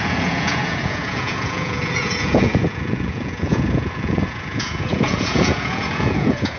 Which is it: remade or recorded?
remade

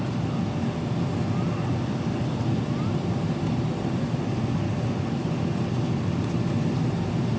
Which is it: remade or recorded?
recorded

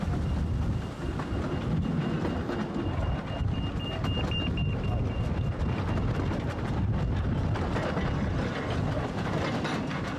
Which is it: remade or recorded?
recorded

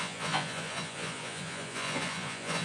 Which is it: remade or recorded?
remade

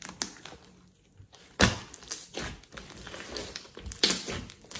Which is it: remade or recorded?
recorded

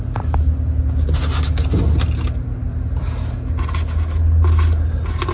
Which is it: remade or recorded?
recorded